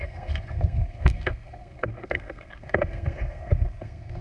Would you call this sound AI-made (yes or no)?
yes